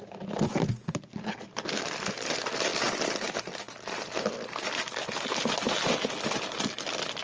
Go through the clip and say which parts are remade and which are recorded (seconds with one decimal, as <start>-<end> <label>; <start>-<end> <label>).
0.0-7.2 recorded